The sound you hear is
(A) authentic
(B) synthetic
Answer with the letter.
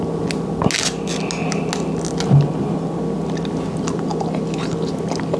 A